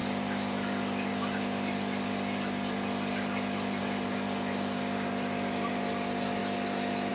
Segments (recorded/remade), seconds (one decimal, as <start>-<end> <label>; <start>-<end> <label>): 0.0-7.1 recorded